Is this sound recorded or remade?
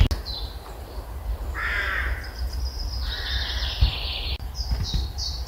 recorded